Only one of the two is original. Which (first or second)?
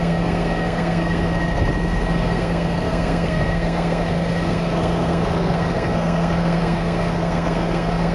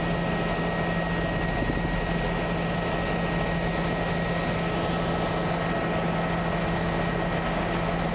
second